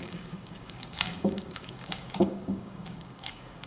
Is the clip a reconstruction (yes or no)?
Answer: yes